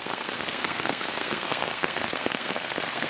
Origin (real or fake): fake